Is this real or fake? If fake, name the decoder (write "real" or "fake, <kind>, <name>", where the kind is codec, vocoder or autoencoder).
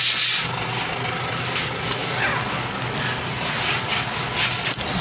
real